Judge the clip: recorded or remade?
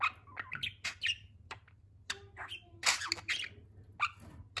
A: recorded